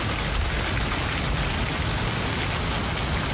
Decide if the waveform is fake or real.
real